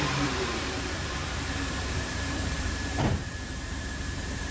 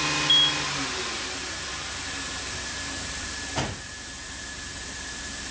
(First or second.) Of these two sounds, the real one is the second